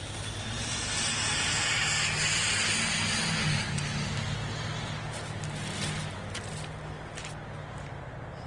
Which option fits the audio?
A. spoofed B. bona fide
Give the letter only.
B